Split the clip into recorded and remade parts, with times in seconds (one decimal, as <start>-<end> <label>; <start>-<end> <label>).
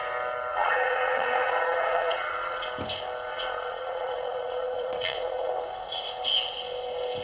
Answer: 0.0-0.5 recorded; 0.5-2.7 remade; 2.7-3.3 recorded; 3.3-5.5 remade; 5.5-7.2 recorded